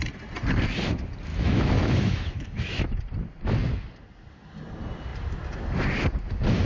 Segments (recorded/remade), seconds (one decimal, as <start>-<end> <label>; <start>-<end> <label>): 0.0-1.3 recorded; 1.3-3.0 remade; 3.0-6.7 recorded